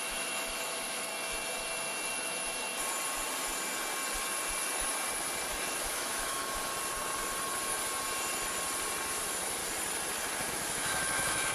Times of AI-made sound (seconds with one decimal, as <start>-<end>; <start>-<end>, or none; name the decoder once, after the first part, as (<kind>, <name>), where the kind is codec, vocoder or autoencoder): 0.0-1.1 (autoencoder, DAC-VAE); 5.8-6.7; 9.1-9.6; 10.5-11.5